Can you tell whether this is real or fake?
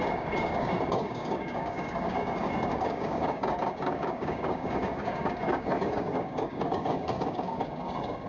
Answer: fake